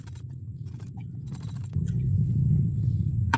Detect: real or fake fake